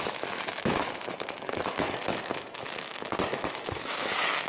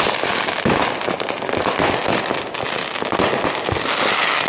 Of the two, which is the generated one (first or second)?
first